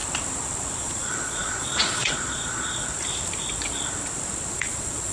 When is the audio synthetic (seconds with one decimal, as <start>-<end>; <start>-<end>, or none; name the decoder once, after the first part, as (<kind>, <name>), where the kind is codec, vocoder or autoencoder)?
0.8-2.8 (vocoder, Vocos); 4.5-5.1

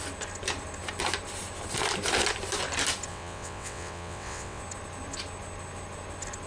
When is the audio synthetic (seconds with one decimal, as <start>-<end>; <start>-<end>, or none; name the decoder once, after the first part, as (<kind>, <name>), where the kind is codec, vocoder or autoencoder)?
3.1-4.6 (vocoder, WaveNeXt)

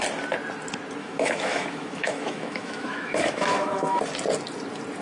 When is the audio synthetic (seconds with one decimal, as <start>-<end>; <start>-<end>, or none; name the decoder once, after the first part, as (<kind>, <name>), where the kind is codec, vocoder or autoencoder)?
1.0-4.0 (autoencoder, DAC-VAE)

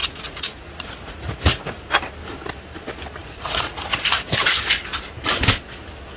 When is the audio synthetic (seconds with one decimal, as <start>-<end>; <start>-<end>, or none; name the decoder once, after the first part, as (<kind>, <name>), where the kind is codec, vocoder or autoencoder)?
0.0-2.0 (vocoder, Vocos); 3.2-4.8

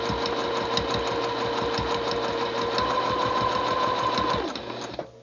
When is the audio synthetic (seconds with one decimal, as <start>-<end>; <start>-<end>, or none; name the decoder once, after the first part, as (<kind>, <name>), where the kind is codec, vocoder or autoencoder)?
none

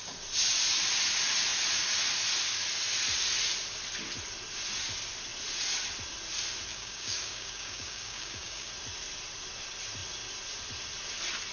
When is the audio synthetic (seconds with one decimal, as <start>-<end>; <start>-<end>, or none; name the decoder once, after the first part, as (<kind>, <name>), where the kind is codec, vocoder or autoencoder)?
6.7-8.7 (codec, DAC)

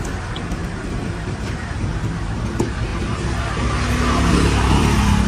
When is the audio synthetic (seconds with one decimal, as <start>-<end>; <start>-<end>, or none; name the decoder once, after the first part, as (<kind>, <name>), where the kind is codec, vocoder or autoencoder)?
0.6-2.1 (vocoder, BigVGAN v2)